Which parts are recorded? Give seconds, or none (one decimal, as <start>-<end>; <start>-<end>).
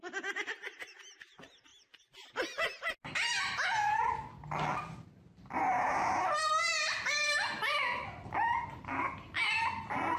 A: 0.0-10.2